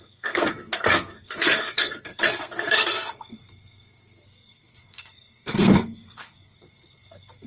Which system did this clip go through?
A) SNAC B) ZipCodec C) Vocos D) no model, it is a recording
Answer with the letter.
A